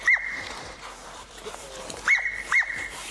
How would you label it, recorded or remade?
remade